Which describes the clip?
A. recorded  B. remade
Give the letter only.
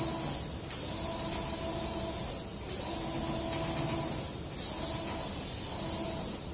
A